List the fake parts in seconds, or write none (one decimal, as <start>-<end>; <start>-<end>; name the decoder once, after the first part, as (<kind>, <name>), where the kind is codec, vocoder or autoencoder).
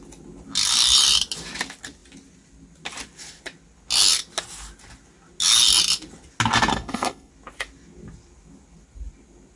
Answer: 6.7-7.3 (codec, SNAC)